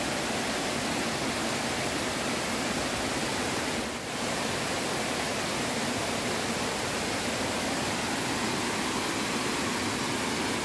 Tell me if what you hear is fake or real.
real